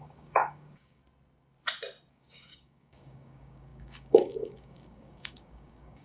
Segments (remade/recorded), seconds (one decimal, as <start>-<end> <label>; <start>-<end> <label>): 0.0-1.0 remade; 1.0-2.1 recorded; 2.1-6.0 remade